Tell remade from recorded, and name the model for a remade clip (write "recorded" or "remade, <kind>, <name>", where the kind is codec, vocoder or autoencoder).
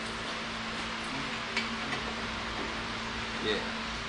recorded